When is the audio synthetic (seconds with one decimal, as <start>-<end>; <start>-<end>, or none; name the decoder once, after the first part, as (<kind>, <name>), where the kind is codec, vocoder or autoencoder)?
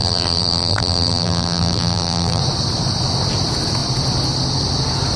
0.0-2.4 (vocoder, BigVGAN v2)